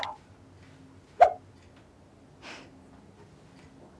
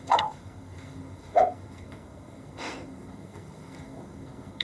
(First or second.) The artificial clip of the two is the second